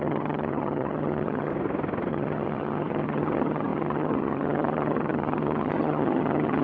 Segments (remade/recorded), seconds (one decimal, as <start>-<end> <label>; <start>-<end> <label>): 0.0-1.5 remade; 1.5-2.1 recorded; 2.1-6.6 remade